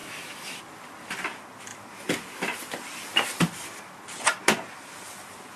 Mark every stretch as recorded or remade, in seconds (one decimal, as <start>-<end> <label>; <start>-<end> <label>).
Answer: 0.0-0.6 remade; 0.6-5.6 recorded